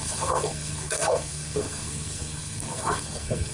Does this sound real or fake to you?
fake